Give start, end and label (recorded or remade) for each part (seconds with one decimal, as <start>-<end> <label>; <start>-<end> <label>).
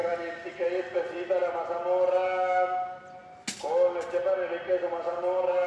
0.0-1.4 remade; 1.4-4.8 recorded; 4.8-5.7 remade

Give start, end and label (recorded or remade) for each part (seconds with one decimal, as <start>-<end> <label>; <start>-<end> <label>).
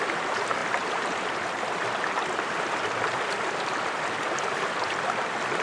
0.0-5.6 recorded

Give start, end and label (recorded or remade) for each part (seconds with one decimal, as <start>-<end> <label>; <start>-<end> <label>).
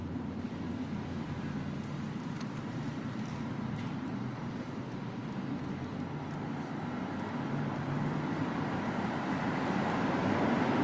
0.0-5.2 remade; 5.2-8.8 recorded; 8.8-10.8 remade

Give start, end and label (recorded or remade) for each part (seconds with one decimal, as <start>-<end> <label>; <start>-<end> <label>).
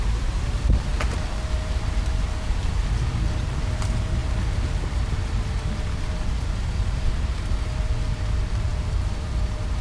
0.0-9.8 remade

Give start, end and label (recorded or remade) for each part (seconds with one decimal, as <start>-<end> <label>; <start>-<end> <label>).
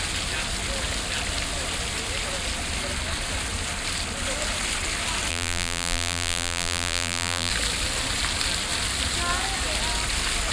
0.0-5.3 recorded; 5.3-7.5 remade; 7.5-10.5 recorded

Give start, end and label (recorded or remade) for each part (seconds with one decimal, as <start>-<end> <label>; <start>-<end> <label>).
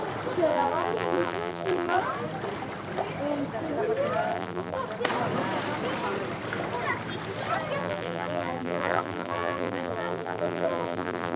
0.0-0.5 recorded; 0.5-2.0 remade; 2.0-4.3 recorded; 4.3-4.8 remade; 4.8-7.8 recorded; 7.8-11.4 remade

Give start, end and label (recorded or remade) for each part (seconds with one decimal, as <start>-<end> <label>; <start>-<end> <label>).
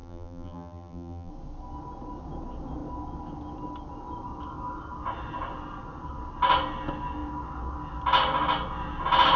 0.0-1.3 remade; 1.3-9.4 recorded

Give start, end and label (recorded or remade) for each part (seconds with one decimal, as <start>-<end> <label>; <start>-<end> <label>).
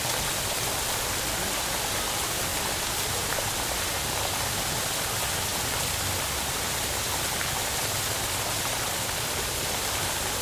0.0-10.4 recorded